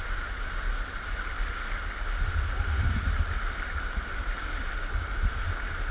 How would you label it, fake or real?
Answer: real